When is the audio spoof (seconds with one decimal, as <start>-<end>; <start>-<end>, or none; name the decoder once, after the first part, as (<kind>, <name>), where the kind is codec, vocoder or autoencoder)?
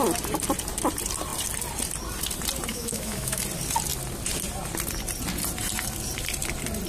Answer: 2.7-3.4 (autoencoder, DAC-VAE)